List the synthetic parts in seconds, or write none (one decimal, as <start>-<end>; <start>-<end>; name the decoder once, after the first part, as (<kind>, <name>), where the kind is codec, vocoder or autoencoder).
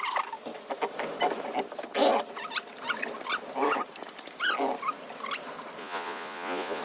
5.8-6.8 (vocoder, Vocos)